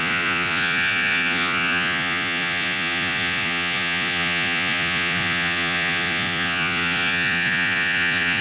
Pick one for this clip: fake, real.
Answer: fake